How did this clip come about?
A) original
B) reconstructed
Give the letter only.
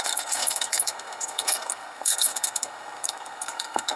B